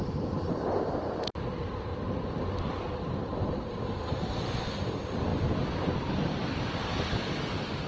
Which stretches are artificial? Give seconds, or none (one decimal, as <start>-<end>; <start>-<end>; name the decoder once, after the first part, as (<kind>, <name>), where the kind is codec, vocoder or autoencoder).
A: 0.0-1.9 (vocoder, BigVGAN v2); 2.7-5.3; 6.1-7.9